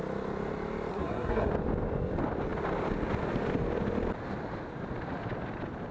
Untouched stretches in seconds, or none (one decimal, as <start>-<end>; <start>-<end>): 0.0-0.9; 1.5-5.9